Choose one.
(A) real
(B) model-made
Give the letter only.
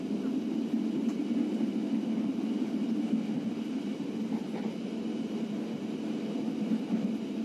A